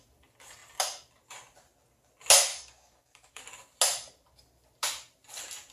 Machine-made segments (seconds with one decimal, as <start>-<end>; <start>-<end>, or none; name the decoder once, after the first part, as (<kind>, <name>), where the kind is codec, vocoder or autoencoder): 2.5-3.4 (codec, DAC)